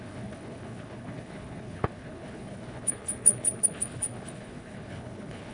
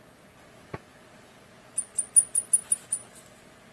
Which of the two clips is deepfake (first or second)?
first